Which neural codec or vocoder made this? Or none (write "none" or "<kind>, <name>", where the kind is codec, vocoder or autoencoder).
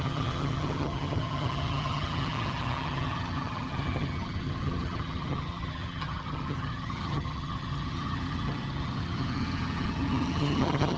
vocoder, HiFi-GAN